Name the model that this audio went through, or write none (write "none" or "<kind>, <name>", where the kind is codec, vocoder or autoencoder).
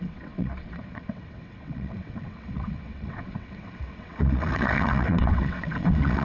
vocoder, WaveNeXt